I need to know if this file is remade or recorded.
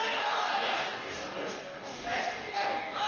remade